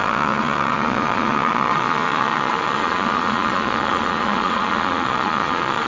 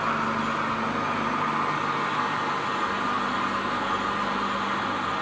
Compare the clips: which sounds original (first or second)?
second